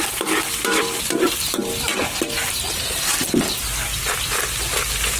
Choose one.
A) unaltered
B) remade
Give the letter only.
A